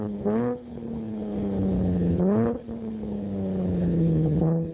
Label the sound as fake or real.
fake